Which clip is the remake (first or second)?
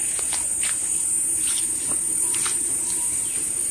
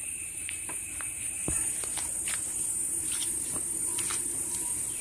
second